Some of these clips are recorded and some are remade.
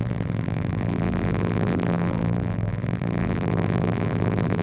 remade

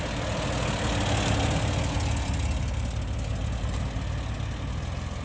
recorded